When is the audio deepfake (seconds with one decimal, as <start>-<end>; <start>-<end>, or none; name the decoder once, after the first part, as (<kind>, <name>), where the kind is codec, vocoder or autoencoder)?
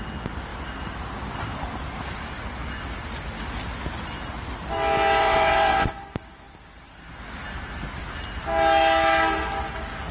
5.2-5.9 (vocoder, WaveNeXt)